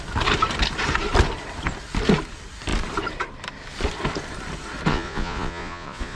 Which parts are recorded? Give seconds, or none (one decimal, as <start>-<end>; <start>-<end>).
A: 0.0-4.9